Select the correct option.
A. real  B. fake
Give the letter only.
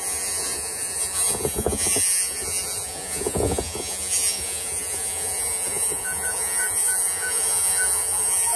B